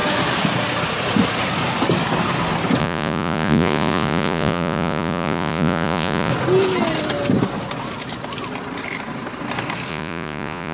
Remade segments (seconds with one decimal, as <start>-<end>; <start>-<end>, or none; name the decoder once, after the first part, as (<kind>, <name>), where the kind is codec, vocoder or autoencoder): 2.8-6.3 (vocoder, Vocos); 9.9-10.7